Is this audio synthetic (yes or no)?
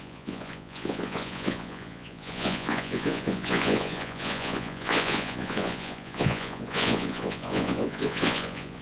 yes